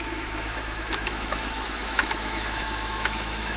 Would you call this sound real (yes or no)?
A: no